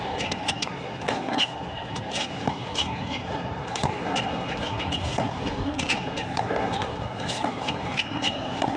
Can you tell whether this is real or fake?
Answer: fake